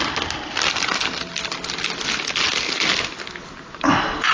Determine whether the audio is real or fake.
real